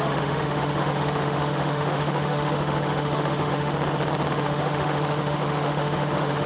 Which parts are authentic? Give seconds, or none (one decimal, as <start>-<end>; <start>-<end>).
3.7-4.3